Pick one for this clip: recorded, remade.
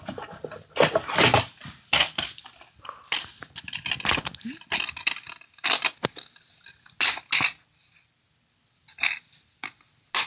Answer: recorded